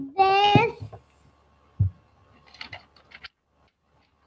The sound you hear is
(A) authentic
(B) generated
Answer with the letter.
A